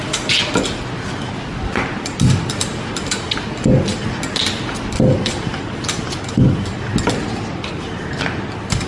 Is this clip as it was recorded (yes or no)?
yes